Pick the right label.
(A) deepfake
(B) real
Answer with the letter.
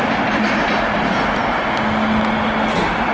B